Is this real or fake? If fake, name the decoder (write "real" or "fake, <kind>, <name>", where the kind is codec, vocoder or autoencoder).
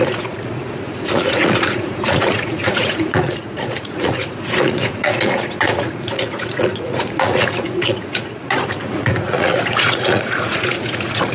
fake, vocoder, Vocos